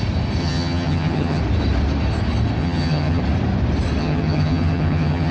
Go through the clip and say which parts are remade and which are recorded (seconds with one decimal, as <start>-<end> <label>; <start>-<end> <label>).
0.0-0.4 recorded; 0.4-1.4 remade; 1.4-2.6 recorded; 2.6-3.2 remade; 3.2-4.0 recorded; 4.0-5.3 remade